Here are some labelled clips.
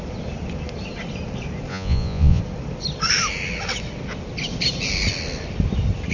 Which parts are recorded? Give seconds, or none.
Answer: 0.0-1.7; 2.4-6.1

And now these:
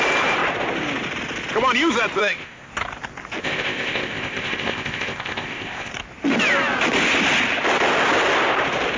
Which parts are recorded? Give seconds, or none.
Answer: 0.0-2.2; 2.7-3.4; 5.9-9.0

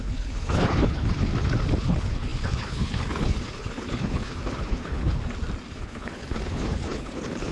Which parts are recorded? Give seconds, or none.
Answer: 1.3-1.8; 5.2-5.7

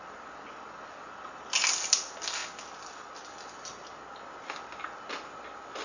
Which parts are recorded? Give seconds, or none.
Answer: 0.0-5.8

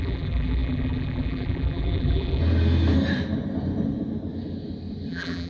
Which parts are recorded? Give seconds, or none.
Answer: 2.4-5.1

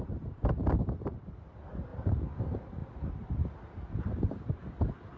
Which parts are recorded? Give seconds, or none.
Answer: 2.8-4.1; 4.6-5.2

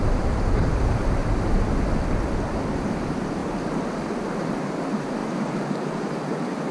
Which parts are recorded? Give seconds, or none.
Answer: 1.2-2.8; 3.4-4.4